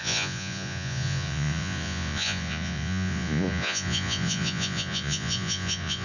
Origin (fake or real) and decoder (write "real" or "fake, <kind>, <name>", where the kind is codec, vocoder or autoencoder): fake, vocoder, Vocos